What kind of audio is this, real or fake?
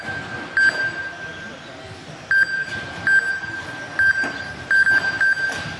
real